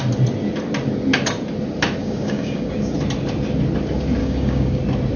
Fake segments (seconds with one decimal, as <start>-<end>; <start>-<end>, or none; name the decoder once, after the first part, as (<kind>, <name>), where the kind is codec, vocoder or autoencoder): 2.0-2.9 (codec, DAC); 4.2-4.8

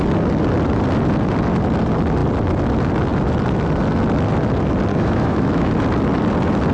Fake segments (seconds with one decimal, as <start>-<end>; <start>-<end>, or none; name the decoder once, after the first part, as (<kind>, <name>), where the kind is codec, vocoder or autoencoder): 4.9-5.7 (autoencoder, DAC-VAE)

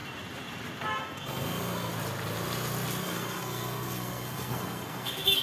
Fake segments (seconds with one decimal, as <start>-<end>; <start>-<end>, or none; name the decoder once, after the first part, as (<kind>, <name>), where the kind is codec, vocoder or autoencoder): 1.0-1.9 (codec, SNAC); 3.0-5.4

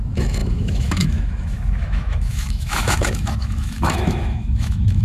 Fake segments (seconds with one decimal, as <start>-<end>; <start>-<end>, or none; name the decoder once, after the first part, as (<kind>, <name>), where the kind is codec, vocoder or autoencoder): 0.0-5.0 (autoencoder, DAC-VAE)

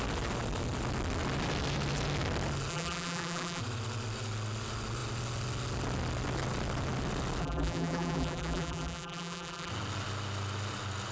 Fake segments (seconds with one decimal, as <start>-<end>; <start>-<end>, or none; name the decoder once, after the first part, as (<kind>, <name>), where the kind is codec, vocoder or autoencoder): 2.7-3.6 (vocoder, BigVGAN v2); 7.4-9.7

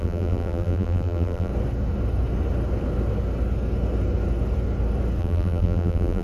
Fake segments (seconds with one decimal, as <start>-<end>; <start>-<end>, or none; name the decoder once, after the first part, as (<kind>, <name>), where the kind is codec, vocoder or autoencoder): 0.0-1.5 (vocoder, BigVGAN v2); 5.2-6.2

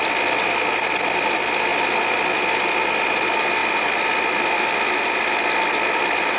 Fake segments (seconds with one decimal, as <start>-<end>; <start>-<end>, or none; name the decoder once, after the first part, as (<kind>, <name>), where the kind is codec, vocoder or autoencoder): none

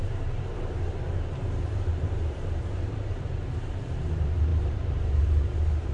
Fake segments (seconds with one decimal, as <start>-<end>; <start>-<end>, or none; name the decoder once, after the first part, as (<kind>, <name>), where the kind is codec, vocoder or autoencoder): 0.0-5.9 (vocoder, BigVGAN v2)